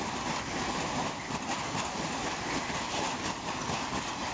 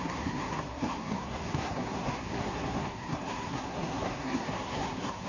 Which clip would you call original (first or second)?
first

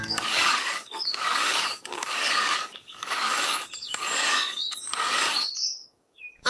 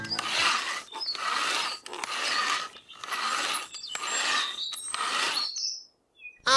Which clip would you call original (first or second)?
second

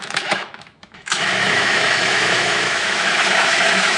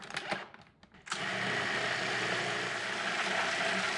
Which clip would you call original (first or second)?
second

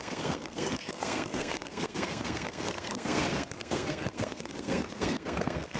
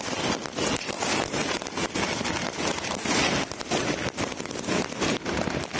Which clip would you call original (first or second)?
second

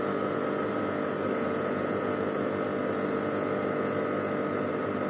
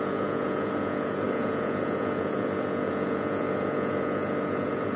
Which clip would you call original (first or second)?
first